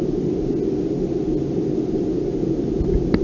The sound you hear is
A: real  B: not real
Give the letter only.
A